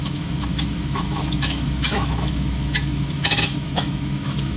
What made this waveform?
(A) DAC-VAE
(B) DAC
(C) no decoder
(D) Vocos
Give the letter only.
A